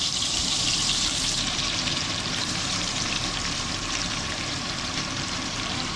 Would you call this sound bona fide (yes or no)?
no